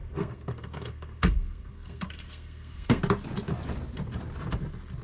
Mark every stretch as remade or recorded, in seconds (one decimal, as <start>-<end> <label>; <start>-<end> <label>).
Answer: 0.0-3.0 remade; 3.0-5.0 recorded

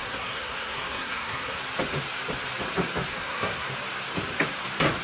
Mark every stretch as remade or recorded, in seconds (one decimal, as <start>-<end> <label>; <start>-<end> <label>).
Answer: 0.0-1.6 remade; 1.6-3.1 recorded; 3.1-3.7 remade; 3.7-5.0 recorded